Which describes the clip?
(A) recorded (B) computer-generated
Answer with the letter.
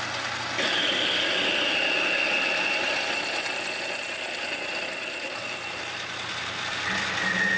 A